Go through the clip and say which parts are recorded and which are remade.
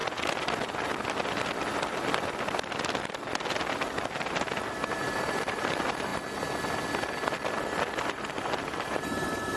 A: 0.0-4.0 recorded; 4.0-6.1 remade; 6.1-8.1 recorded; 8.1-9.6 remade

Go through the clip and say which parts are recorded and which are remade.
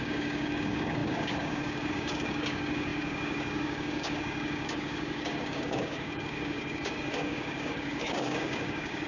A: 0.0-9.1 remade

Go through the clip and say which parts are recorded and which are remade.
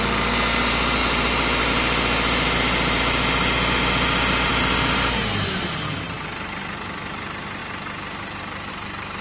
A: 0.0-9.2 recorded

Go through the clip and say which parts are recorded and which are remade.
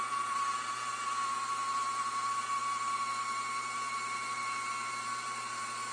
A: 0.0-5.9 recorded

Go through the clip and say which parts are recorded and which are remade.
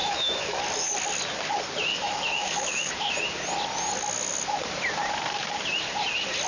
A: 0.0-0.6 remade; 0.6-1.9 recorded; 1.9-2.9 remade; 2.9-6.5 recorded